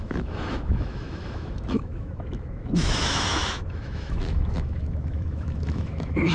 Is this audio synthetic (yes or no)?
yes